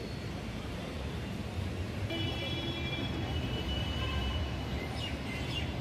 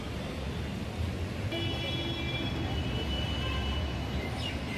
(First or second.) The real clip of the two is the second